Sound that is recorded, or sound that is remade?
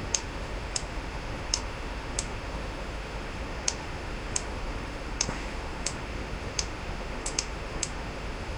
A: remade